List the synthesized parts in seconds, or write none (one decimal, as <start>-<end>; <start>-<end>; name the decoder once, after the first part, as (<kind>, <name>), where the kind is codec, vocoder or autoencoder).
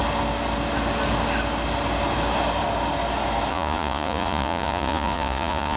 3.5-5.8 (vocoder, Vocos)